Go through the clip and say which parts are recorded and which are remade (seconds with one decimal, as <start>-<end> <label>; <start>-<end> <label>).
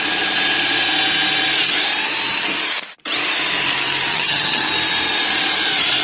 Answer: 0.0-4.1 recorded; 4.1-4.7 remade; 4.7-6.0 recorded